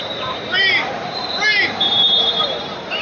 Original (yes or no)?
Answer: no